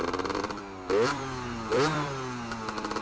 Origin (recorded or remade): remade